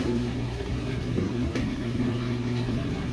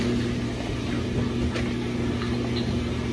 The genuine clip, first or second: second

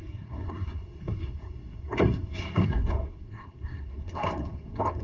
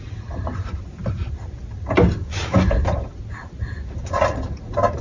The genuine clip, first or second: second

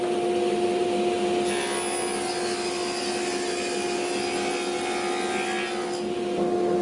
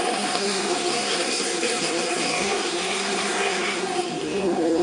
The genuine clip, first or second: first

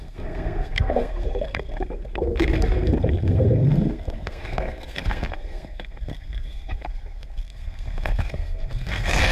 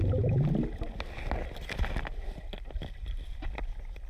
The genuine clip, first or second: second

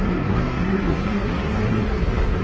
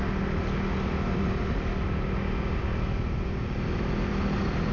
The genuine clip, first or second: second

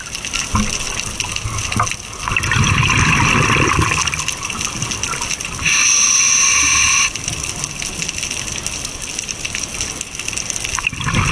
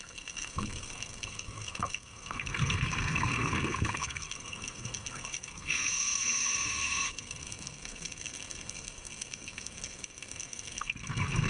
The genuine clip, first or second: first